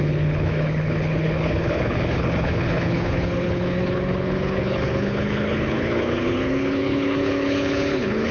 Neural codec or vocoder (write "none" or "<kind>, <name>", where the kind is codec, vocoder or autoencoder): codec, HILCodec